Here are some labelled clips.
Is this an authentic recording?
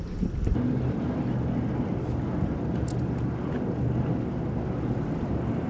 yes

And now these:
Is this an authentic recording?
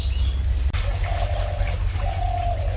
yes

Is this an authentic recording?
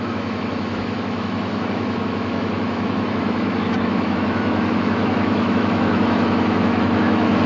no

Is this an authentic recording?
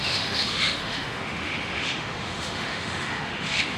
no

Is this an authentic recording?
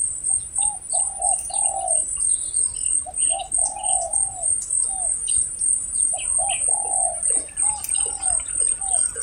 yes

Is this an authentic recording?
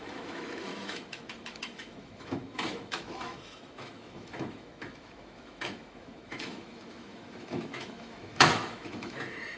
no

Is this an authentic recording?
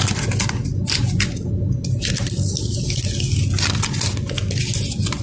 yes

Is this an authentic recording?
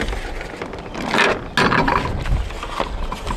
yes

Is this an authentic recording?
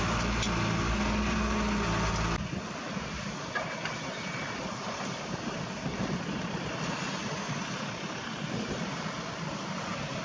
yes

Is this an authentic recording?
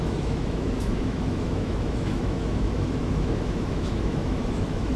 no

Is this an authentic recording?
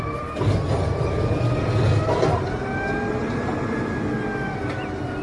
yes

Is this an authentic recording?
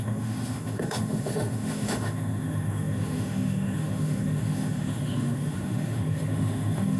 no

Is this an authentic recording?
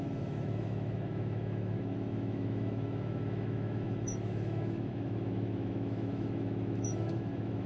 no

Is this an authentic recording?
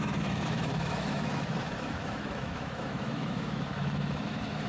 no